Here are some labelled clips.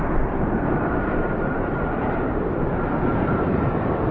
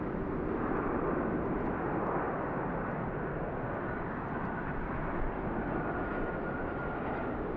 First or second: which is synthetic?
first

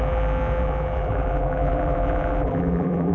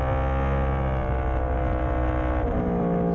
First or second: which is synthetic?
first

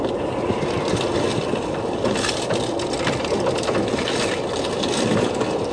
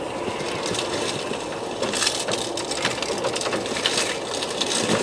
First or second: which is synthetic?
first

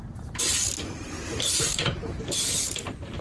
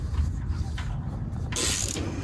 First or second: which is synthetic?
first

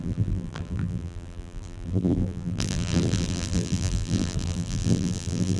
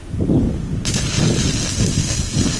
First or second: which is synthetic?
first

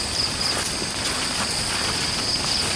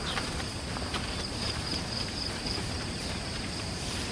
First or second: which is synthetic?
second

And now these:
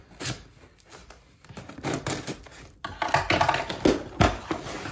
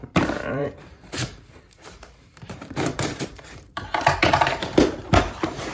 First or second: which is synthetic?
second